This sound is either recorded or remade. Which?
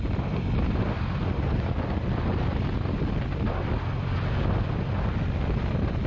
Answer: recorded